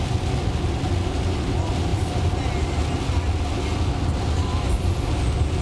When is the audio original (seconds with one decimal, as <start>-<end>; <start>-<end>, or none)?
0.0-5.6